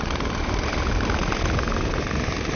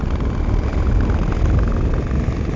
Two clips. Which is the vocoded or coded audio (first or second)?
first